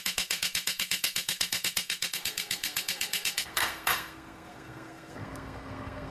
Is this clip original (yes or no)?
no